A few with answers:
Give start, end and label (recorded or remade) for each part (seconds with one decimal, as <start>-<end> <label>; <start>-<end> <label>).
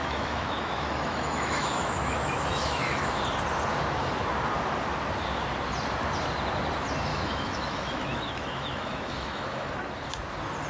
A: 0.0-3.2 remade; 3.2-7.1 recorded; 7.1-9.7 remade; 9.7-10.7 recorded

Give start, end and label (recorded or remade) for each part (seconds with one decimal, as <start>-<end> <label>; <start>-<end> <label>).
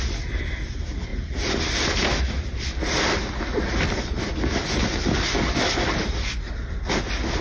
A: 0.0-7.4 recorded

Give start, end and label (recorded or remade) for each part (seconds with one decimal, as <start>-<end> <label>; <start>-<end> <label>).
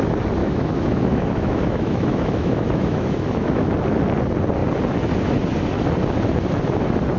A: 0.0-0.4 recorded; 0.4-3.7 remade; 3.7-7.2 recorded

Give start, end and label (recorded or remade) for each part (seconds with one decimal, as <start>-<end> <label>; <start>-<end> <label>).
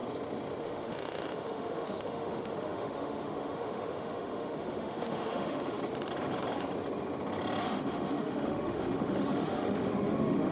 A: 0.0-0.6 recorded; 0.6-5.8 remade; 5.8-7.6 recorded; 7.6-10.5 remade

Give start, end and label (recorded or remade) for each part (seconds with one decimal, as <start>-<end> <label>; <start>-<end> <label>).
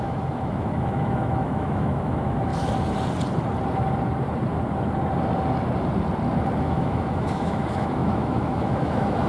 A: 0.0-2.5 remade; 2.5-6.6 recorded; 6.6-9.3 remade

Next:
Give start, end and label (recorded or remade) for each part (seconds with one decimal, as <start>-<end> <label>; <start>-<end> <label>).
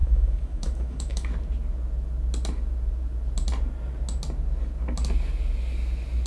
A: 0.0-1.3 remade; 1.3-6.3 recorded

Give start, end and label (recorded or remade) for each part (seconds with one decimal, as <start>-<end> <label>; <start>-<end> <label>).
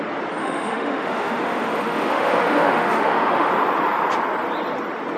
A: 0.0-0.4 recorded; 0.4-3.5 remade; 3.5-5.2 recorded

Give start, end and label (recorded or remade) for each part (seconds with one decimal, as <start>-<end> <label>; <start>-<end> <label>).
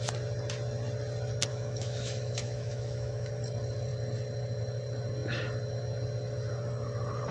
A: 0.0-1.5 recorded; 1.5-3.3 remade; 3.3-7.3 recorded